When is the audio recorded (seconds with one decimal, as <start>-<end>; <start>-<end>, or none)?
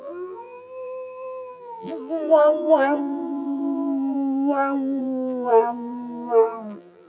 none